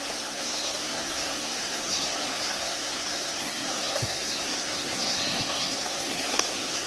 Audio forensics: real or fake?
fake